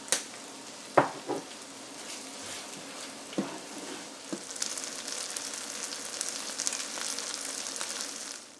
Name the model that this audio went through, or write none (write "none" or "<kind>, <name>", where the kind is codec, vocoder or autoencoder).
none